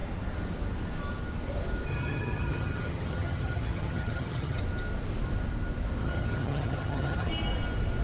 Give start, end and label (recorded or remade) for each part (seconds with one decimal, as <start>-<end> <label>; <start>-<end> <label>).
0.0-1.9 recorded; 1.9-4.6 remade; 4.6-6.0 recorded; 6.0-7.3 remade; 7.3-8.0 recorded